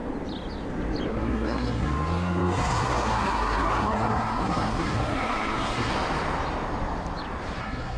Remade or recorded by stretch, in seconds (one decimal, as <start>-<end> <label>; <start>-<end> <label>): 0.0-1.1 recorded; 1.1-5.9 remade; 5.9-7.6 recorded; 7.6-8.0 remade